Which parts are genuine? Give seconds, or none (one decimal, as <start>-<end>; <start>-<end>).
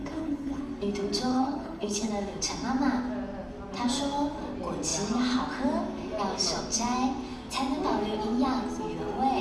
0.6-1.3; 2.1-9.4